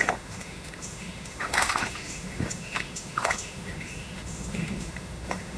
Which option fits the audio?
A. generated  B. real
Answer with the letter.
A